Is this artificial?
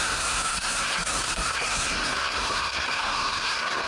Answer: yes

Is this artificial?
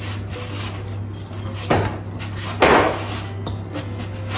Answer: no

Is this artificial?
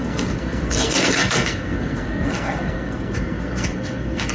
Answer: yes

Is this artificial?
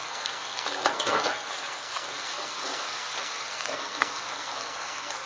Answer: yes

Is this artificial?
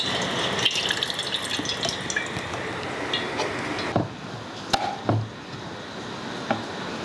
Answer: no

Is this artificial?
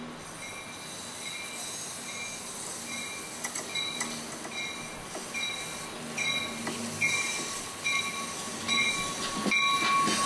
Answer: no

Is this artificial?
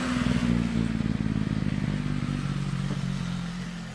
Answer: no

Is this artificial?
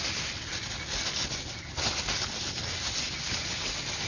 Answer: no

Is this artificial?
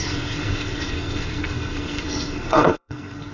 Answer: yes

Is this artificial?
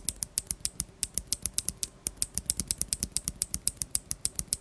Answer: no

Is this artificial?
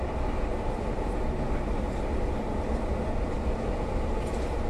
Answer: no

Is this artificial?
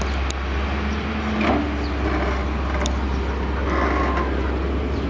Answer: no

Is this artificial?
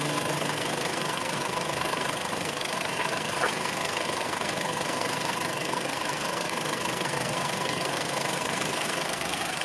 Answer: yes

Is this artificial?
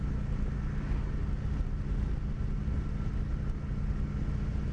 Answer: no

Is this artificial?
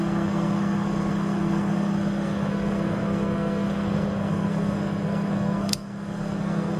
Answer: yes